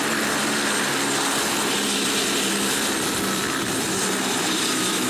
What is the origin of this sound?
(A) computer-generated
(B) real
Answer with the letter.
A